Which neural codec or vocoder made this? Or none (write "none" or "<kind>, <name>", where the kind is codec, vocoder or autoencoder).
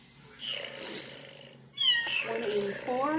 none